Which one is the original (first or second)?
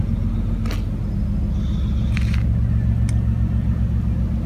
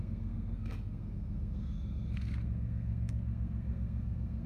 first